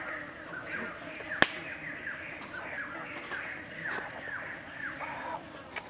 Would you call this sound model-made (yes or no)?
no